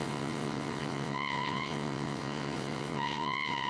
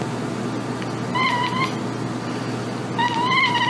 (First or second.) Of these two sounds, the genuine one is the second